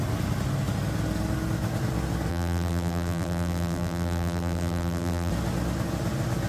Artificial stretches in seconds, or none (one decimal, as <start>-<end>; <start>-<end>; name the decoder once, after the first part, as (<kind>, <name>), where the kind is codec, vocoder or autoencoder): 2.3-5.3 (vocoder, BigVGAN v2)